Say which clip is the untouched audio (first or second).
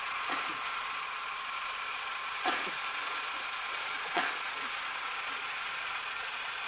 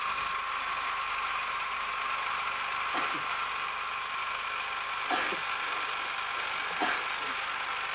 second